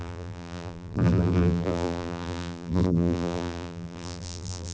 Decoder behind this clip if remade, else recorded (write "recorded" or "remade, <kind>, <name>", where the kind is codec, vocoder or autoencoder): remade, vocoder, BigVGAN v2